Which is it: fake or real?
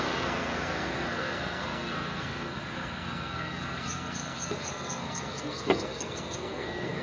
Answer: fake